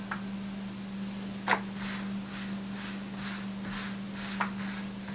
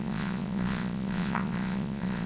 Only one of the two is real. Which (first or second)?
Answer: first